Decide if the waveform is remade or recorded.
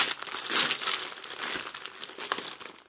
recorded